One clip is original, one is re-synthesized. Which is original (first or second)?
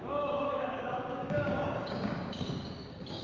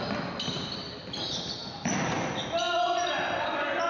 second